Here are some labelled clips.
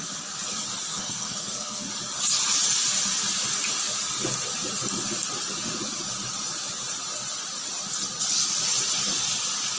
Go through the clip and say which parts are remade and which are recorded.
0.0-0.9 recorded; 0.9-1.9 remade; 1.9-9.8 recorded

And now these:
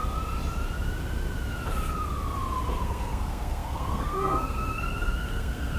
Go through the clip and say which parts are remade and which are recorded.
0.0-2.8 recorded; 2.8-5.8 remade

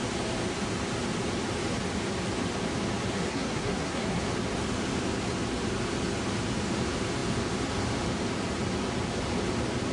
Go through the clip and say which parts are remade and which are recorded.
0.0-3.3 recorded; 3.3-4.2 remade; 4.2-9.9 recorded